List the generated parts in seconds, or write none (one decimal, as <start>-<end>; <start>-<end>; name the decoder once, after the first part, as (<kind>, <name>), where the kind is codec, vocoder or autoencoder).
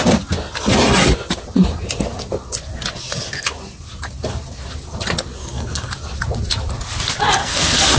5.4-5.9 (codec, SNAC); 7.4-8.0